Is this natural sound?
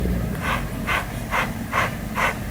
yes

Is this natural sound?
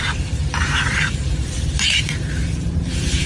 no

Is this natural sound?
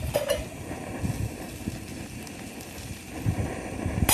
yes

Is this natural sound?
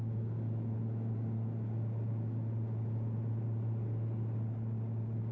yes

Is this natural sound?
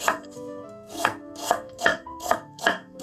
no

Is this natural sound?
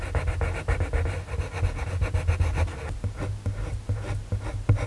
yes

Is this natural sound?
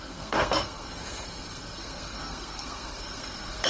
no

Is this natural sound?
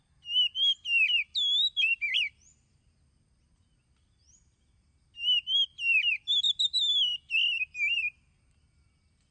yes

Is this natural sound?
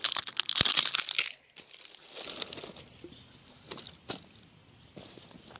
yes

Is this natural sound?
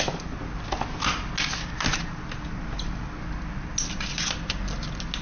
yes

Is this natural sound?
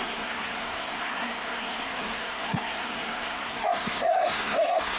no